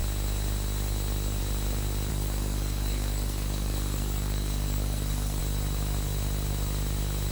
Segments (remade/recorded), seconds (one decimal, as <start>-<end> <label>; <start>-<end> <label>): 0.0-2.1 recorded; 2.1-5.4 remade; 5.4-7.3 recorded